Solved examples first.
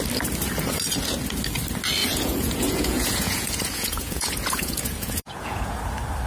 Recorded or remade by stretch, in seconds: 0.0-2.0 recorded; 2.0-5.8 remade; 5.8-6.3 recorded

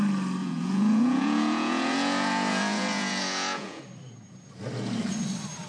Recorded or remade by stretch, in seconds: 0.0-0.4 recorded; 0.4-3.8 remade; 3.8-5.7 recorded

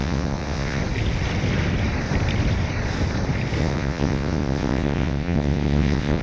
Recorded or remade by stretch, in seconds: 0.0-0.8 remade; 0.8-3.6 recorded; 3.6-6.2 remade